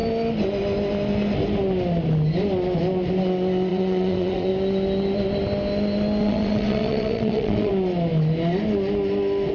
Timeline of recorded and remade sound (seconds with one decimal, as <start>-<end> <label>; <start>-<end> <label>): 0.0-3.7 recorded; 3.7-4.5 remade; 4.5-6.2 recorded; 6.2-7.7 remade; 7.7-9.5 recorded